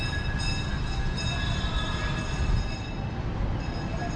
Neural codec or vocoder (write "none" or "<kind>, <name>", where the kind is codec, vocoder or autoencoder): none